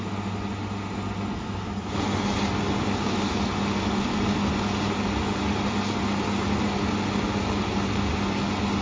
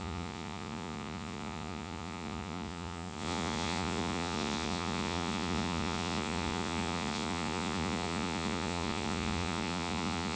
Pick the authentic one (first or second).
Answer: first